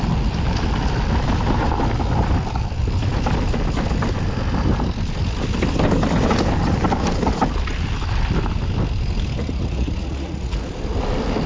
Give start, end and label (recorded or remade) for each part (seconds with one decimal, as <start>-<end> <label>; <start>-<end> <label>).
0.0-9.4 recorded; 9.4-10.6 remade; 10.6-11.5 recorded